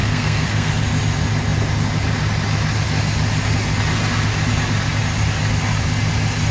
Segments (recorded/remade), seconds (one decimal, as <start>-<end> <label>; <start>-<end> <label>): 0.0-0.7 remade; 0.7-6.5 recorded